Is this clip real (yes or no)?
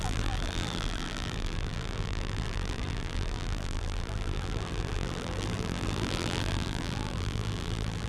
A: no